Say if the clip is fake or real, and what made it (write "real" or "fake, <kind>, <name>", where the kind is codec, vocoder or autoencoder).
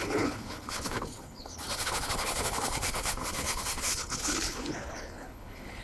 fake, codec, HILCodec